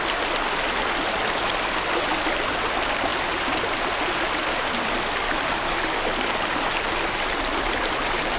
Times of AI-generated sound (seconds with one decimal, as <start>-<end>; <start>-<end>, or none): none